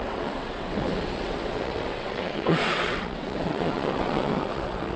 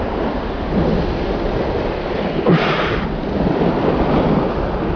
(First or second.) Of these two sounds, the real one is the second